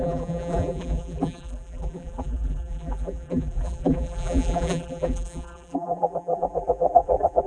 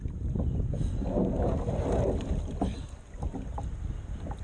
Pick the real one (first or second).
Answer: second